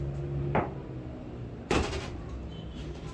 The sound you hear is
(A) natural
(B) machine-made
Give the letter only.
A